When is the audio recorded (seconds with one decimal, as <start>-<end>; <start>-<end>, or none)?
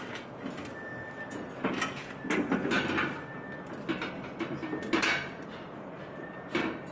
0.0-6.9